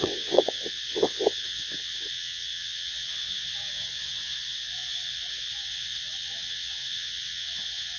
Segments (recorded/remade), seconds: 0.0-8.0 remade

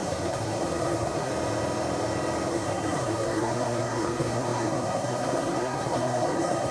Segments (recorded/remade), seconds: 0.0-1.3 remade; 1.3-2.5 recorded; 2.5-6.7 remade

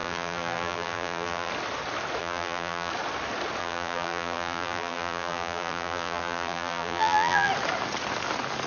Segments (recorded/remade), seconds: 0.0-1.5 remade; 1.5-2.2 recorded; 2.2-2.9 remade; 2.9-3.6 recorded; 3.6-7.5 remade; 7.5-8.7 recorded

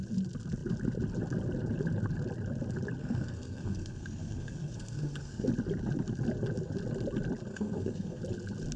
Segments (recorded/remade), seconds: 0.0-3.0 recorded; 3.0-5.5 remade; 5.5-7.5 recorded; 7.5-8.2 remade; 8.2-8.8 recorded